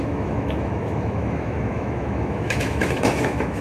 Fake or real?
fake